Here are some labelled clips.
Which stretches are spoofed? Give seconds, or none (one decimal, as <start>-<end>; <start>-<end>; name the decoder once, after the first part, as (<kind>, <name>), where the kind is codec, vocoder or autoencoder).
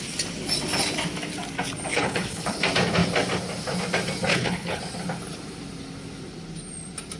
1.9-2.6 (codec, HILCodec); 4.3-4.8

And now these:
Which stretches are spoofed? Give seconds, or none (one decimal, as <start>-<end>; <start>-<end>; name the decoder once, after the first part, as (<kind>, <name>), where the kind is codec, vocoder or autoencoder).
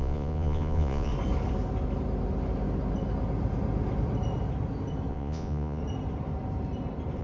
0.0-1.1 (vocoder, Vocos); 5.1-5.8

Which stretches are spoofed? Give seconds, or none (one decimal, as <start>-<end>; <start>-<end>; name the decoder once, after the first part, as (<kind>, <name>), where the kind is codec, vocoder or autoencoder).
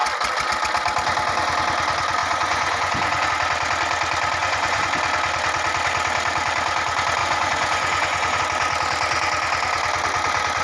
2.2-3.3 (vocoder, Vocos); 4.4-4.9; 7.2-8.4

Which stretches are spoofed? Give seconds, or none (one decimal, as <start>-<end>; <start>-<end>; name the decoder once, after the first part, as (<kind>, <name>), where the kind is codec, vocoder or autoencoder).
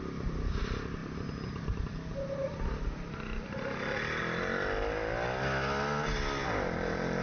1.0-1.8 (vocoder, BigVGAN v2)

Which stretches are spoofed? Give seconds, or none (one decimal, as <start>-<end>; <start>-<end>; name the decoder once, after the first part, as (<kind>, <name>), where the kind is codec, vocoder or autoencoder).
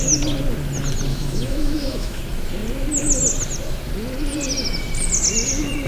1.1-2.2 (autoencoder, DAC-VAE)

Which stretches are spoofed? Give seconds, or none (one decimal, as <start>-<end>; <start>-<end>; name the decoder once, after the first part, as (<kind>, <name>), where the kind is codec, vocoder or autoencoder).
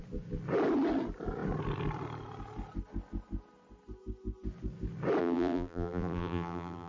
5.2-6.9 (vocoder, BigVGAN v2)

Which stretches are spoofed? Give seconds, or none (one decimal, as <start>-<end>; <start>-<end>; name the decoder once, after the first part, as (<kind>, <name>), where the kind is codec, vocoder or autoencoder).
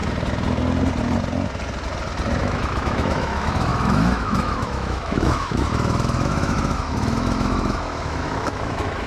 2.4-9.1 (autoencoder, DAC-VAE)